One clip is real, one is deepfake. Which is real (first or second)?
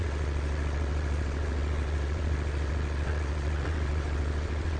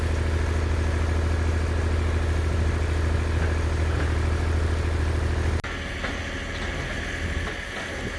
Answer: second